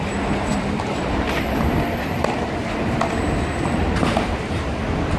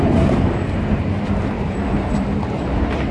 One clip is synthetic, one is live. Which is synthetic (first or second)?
first